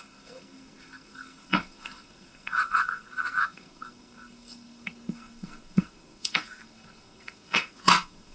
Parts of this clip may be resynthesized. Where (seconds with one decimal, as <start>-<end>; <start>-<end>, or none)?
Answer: 0.0-8.3